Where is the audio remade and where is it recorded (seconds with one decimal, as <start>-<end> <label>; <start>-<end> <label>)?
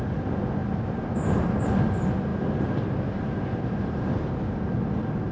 0.0-5.3 recorded